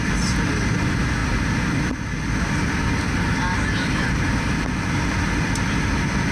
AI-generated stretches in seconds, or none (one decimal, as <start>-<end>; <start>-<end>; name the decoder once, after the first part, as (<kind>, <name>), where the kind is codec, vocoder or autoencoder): none